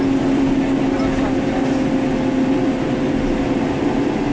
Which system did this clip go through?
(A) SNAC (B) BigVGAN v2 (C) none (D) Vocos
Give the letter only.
C